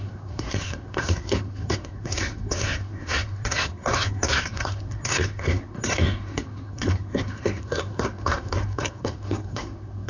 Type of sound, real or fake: fake